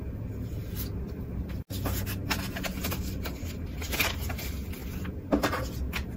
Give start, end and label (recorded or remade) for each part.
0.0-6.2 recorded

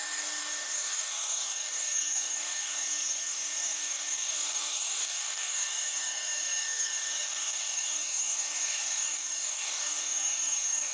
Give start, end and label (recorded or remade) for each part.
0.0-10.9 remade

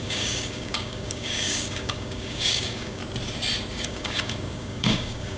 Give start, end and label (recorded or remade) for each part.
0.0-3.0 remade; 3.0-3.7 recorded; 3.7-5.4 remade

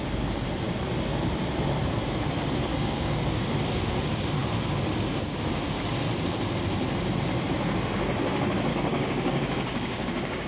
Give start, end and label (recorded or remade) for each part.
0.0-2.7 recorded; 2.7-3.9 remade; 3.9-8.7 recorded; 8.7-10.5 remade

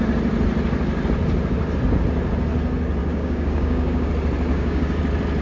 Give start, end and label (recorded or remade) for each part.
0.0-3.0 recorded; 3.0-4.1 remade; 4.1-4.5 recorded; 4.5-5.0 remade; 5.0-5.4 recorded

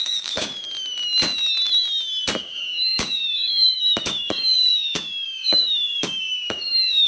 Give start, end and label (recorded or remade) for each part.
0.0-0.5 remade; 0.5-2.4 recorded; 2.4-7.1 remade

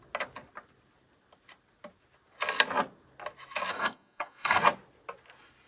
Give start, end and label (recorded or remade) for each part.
0.0-3.7 recorded; 3.7-4.6 remade; 4.6-5.7 recorded